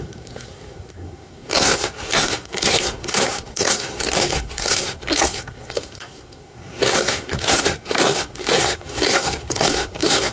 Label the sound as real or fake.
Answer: fake